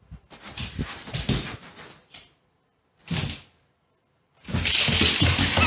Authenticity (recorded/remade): recorded